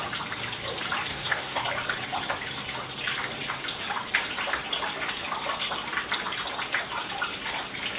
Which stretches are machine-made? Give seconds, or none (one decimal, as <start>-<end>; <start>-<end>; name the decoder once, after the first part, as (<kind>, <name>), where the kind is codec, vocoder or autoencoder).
1.1-1.6 (codec, SNAC)